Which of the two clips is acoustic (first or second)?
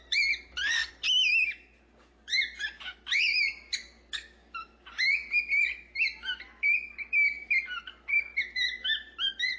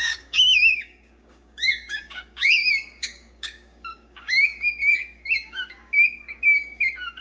first